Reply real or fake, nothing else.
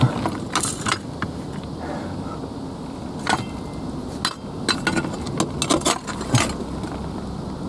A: real